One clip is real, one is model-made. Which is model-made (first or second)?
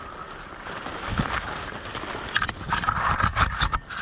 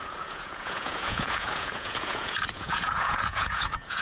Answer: second